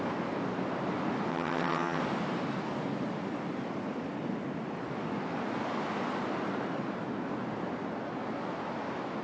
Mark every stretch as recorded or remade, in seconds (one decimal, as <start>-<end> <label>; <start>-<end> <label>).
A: 0.0-1.3 recorded; 1.3-2.0 remade; 2.0-9.2 recorded